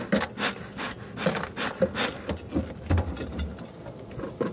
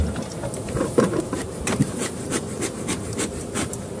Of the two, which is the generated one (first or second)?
second